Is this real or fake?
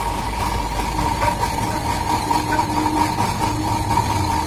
real